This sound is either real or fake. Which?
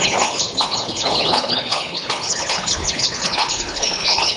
fake